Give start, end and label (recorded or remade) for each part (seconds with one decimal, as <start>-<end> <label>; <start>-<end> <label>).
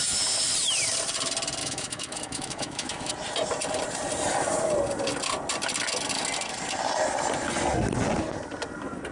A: 0.0-1.6 recorded; 1.6-3.1 remade; 3.1-9.1 recorded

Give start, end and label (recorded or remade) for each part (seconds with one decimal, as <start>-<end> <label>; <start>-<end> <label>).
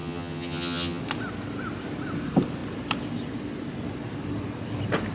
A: 0.0-1.0 remade; 1.0-5.1 recorded